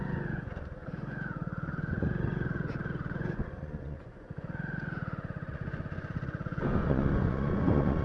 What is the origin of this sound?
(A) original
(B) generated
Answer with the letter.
B